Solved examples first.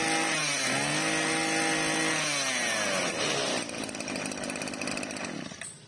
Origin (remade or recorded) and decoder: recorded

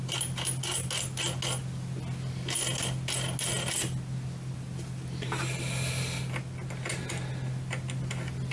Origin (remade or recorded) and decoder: recorded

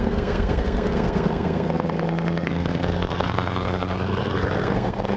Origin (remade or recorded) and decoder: remade, codec, SNAC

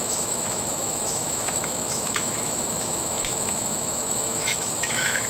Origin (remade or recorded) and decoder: remade, autoencoder, DAC-VAE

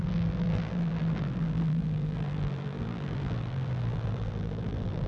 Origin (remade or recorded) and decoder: remade, vocoder, BigVGAN v2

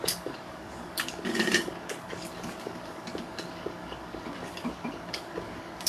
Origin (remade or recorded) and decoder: remade, codec, DAC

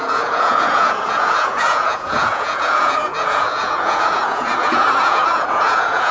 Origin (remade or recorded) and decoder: remade, vocoder, Vocos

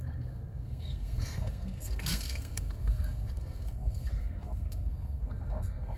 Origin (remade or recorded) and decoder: remade, codec, SNAC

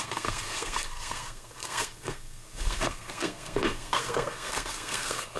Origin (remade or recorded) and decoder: remade, codec, SNAC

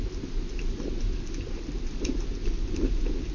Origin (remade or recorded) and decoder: recorded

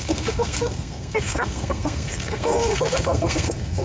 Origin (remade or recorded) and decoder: remade, codec, SNAC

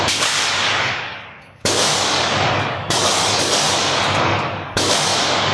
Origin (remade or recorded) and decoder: remade, codec, DAC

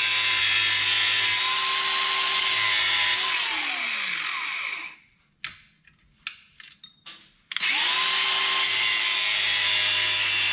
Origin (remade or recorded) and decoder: recorded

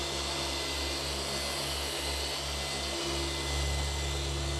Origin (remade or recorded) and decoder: recorded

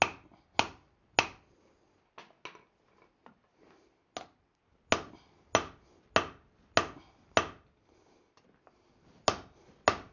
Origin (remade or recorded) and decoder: recorded